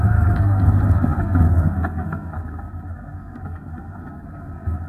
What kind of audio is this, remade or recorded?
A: remade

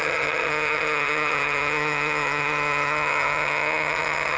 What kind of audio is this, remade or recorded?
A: remade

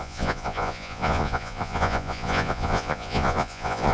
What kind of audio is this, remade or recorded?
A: remade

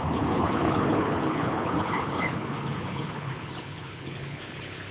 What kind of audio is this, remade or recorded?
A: remade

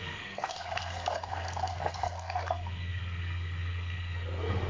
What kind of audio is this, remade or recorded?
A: remade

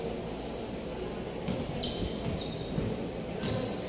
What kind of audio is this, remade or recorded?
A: recorded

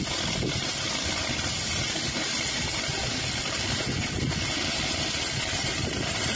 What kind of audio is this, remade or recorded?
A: recorded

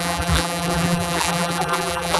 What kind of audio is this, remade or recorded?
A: remade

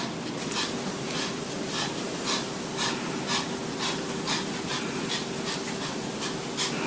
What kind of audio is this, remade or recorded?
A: recorded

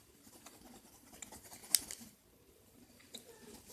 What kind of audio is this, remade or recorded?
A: remade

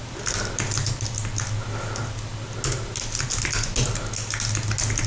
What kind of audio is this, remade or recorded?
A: recorded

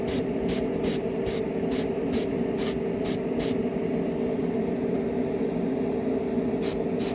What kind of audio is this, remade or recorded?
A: recorded